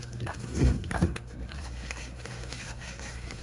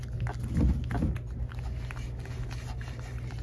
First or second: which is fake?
first